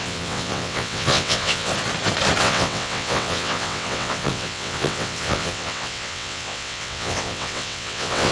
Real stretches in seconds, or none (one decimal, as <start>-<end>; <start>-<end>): 1.7-2.4